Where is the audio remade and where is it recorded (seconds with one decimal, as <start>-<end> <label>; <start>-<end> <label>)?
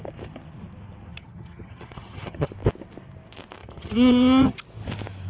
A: 0.0-1.1 recorded; 1.1-2.5 remade; 2.5-3.6 recorded; 3.6-4.5 remade; 4.5-5.3 recorded